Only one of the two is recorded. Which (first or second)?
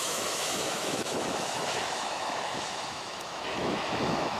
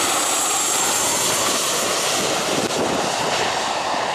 second